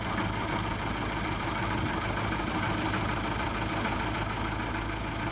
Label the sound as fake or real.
real